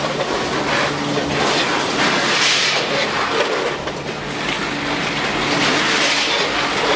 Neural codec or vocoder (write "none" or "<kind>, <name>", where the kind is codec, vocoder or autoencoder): none